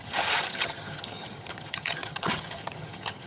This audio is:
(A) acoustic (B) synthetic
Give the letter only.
B